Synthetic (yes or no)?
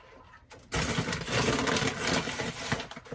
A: no